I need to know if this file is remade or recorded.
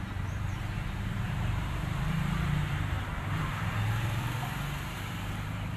remade